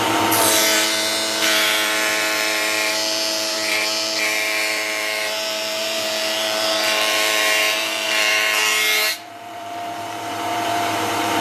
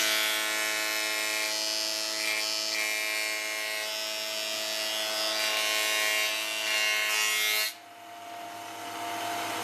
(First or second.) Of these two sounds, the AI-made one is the first